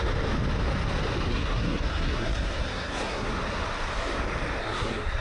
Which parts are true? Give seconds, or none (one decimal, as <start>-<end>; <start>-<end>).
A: 0.0-1.3; 3.3-4.6